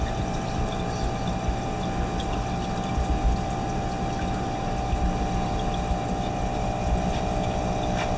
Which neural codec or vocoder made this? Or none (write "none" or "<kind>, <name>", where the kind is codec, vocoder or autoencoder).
none